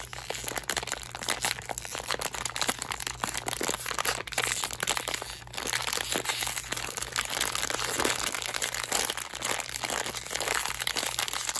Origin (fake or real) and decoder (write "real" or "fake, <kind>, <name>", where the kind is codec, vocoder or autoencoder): real